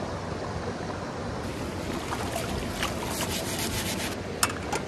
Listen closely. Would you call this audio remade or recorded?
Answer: recorded